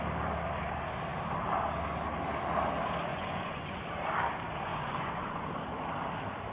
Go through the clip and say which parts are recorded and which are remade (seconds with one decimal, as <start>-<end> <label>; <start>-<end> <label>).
0.0-3.1 recorded; 3.1-3.8 remade; 3.8-4.7 recorded; 4.7-5.5 remade; 5.5-6.5 recorded